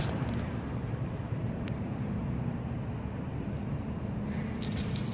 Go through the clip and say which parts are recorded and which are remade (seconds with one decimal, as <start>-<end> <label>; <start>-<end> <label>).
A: 0.0-5.1 recorded